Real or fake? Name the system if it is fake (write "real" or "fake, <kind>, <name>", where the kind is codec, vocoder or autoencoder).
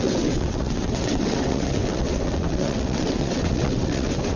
fake, vocoder, WaveNeXt